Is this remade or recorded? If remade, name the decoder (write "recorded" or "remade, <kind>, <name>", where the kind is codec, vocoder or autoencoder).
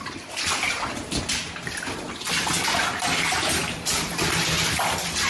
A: recorded